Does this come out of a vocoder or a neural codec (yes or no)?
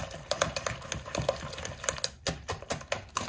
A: no